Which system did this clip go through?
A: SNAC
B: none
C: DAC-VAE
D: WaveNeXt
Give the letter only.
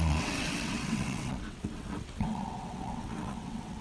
D